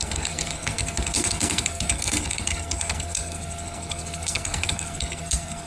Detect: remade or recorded remade